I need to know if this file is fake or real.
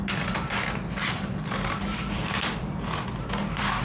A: fake